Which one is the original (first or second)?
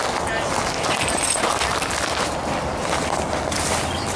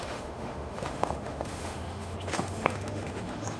first